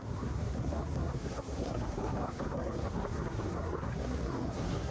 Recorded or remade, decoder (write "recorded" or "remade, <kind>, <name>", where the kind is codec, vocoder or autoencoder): remade, codec, SNAC